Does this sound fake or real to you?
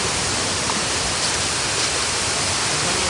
real